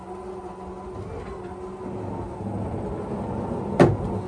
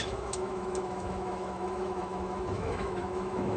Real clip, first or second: first